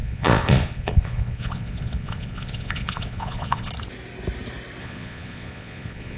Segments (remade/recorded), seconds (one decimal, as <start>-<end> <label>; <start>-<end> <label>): 0.0-3.7 remade; 3.7-4.8 recorded; 4.8-6.2 remade